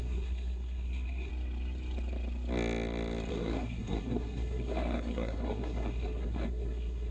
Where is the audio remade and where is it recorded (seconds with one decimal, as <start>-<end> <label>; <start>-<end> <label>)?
0.0-1.3 remade; 1.3-3.3 recorded; 3.3-7.1 remade